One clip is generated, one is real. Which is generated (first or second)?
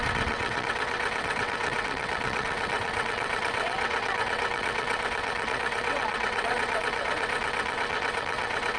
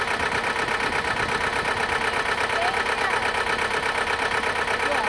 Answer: first